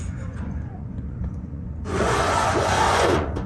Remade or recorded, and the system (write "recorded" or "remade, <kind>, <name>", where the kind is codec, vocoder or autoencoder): remade, vocoder, Vocos